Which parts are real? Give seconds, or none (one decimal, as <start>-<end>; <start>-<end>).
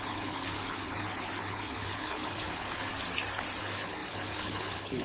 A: 2.9-3.6